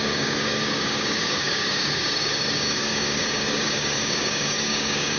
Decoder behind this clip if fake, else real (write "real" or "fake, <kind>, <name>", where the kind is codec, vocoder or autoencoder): fake, codec, DAC